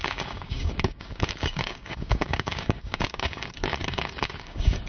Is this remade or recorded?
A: remade